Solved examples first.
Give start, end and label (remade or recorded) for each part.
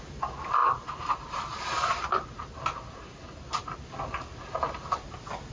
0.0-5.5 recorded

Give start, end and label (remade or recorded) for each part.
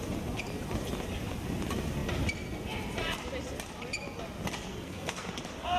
0.0-4.7 recorded; 4.7-5.3 remade; 5.3-5.8 recorded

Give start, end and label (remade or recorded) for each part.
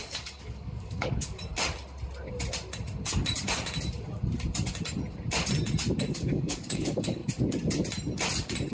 0.0-1.5 remade; 1.5-6.0 recorded; 6.0-7.2 remade; 7.2-8.7 recorded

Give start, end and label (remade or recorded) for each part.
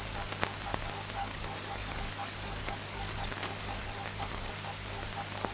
0.0-1.2 recorded; 1.2-4.5 remade; 4.5-5.5 recorded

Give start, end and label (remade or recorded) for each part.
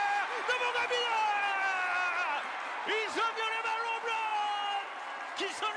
0.0-5.8 recorded